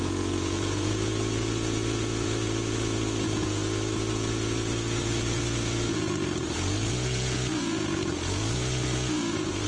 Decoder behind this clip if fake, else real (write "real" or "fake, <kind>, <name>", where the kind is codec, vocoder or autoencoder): fake, vocoder, Vocos